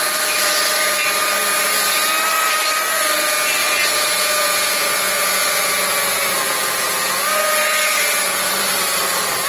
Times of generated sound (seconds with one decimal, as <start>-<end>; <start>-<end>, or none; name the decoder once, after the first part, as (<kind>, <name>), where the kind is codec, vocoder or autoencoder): 3.6-8.5 (vocoder, Vocos)